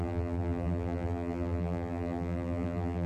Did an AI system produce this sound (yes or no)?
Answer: yes